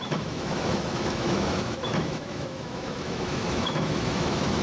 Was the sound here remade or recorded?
remade